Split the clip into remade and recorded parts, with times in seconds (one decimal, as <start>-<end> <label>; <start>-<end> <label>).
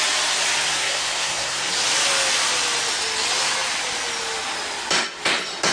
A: 0.0-0.7 recorded; 0.7-1.7 remade; 1.7-5.7 recorded